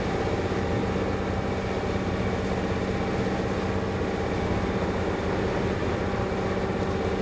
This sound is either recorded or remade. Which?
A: recorded